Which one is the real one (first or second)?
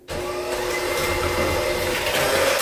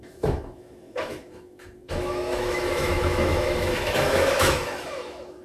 first